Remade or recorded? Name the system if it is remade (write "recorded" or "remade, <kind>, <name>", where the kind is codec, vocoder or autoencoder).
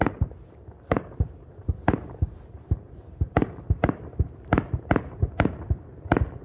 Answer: remade, vocoder, BigVGAN v2